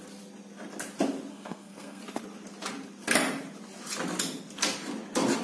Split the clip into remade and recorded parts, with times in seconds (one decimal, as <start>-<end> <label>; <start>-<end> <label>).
0.0-1.3 recorded; 1.3-2.0 remade; 2.0-5.4 recorded